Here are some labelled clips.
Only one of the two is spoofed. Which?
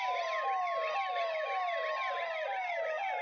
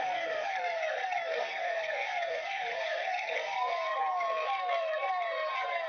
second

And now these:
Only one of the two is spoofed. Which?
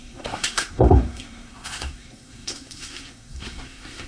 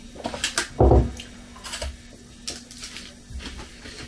first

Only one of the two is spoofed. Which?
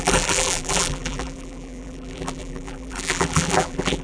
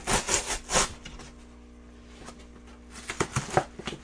first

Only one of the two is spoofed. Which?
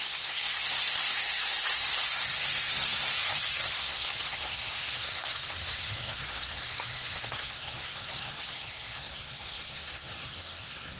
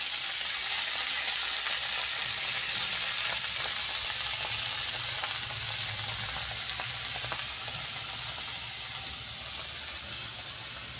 first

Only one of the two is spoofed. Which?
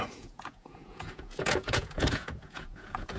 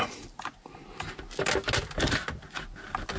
first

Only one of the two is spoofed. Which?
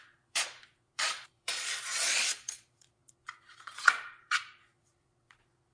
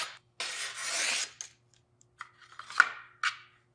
first